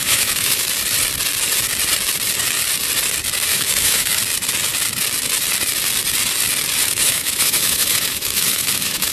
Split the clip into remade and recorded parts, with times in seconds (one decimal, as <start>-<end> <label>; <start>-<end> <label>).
0.0-0.7 remade; 0.7-3.5 recorded; 3.5-4.2 remade; 4.2-6.8 recorded; 6.8-9.1 remade